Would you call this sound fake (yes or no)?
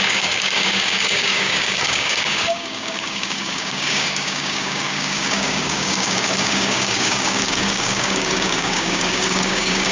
yes